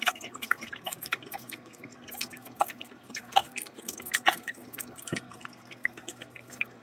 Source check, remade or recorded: remade